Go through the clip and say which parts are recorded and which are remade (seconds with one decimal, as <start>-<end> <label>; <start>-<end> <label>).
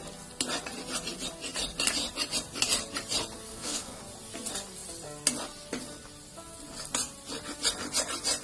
0.0-3.5 recorded; 3.5-4.0 remade; 4.0-8.4 recorded